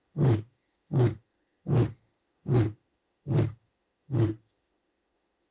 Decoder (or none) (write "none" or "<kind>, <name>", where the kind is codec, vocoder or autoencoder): autoencoder, DAC-VAE